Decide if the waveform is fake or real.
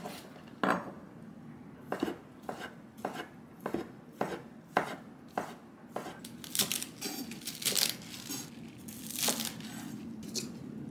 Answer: real